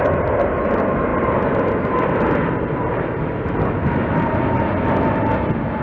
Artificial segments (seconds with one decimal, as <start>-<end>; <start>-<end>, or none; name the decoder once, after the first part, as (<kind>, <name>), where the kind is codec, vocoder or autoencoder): none